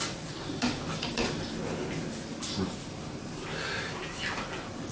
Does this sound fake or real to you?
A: real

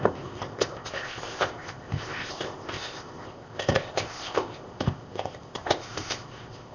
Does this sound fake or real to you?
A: fake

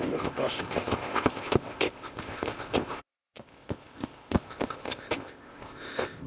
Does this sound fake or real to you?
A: fake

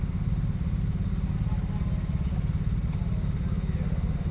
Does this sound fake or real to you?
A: real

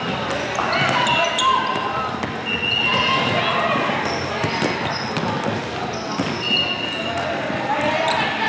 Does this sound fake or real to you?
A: real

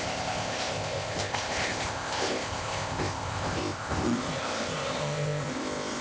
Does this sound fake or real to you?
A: fake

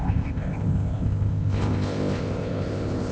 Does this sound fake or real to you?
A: fake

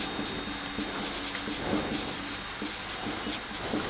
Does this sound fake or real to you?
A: real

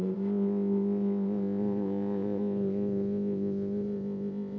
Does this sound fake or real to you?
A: fake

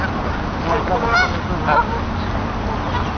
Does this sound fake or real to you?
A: real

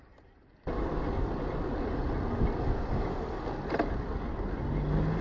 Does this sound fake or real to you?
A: real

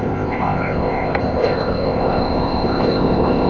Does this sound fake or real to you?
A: fake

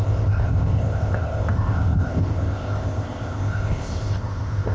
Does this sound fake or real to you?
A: fake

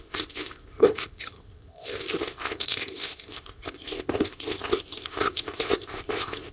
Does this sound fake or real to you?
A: fake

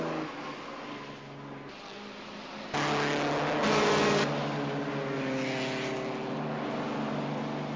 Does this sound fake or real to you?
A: real